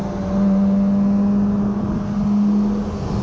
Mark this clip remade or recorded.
recorded